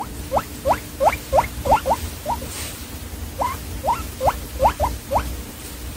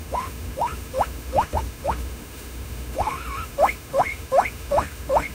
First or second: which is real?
first